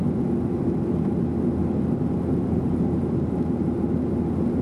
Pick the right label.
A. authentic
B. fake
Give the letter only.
A